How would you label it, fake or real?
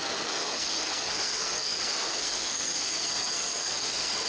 fake